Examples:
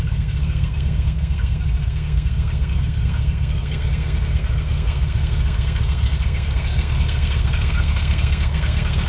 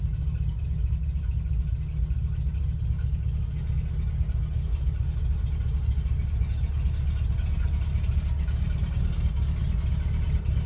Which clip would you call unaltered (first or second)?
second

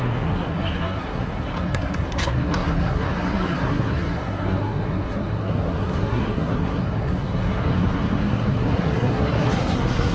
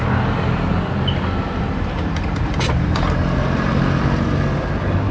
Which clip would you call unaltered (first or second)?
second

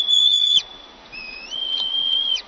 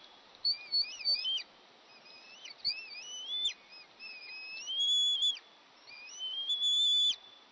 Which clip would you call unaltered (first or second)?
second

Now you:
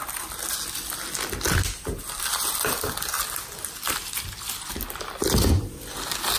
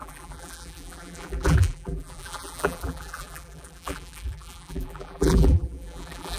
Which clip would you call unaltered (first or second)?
first